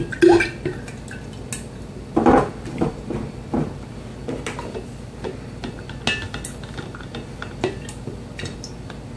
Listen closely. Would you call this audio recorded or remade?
recorded